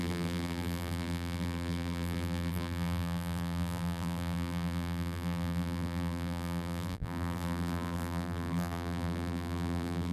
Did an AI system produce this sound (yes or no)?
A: yes